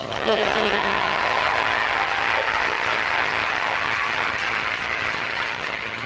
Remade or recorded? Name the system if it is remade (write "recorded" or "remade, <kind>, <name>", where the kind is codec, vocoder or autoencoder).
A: remade, vocoder, HiFi-GAN